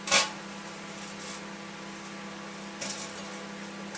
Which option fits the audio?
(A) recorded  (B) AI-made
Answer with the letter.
A